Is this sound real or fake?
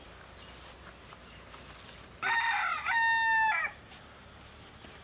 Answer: real